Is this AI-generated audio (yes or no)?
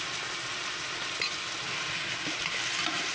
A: no